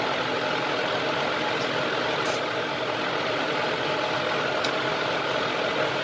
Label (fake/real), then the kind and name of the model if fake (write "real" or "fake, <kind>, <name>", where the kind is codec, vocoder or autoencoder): real